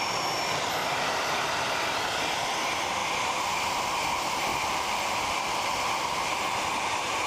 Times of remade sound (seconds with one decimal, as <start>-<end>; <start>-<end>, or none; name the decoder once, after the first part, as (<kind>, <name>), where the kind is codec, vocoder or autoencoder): 0.8-1.4 (vocoder, BigVGAN v2); 3.0-3.5; 4.5-7.3